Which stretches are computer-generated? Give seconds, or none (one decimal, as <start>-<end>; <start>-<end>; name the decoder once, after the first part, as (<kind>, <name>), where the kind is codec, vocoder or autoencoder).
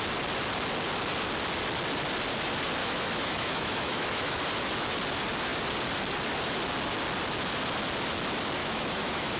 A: 2.8-4.4 (autoencoder, DAC-VAE); 8.6-9.4